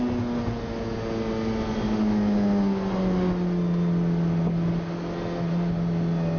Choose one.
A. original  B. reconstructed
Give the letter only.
A